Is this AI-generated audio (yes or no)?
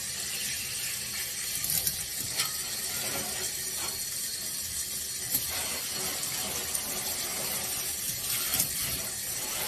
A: no